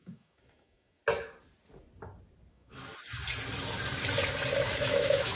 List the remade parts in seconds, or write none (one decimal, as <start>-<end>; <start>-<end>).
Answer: 0.0-1.0; 2.5-2.9; 4.8-5.4